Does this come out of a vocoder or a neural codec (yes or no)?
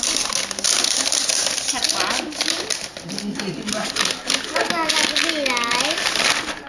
no